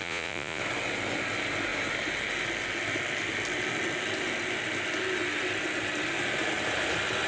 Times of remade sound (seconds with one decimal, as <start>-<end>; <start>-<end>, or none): 0.0-0.6